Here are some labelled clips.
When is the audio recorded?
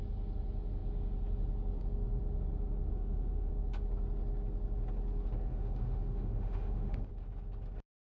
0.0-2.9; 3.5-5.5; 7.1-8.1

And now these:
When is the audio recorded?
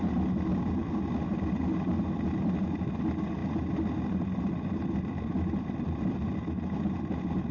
0.0-7.5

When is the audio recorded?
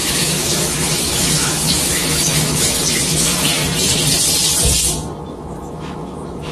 3.6-5.3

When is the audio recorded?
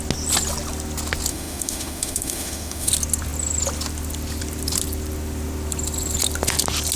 0.0-1.3; 2.9-7.0